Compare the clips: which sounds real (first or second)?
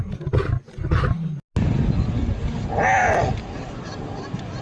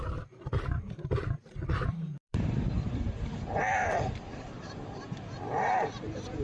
first